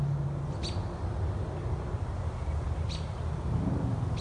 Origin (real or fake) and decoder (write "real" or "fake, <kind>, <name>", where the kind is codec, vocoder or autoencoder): real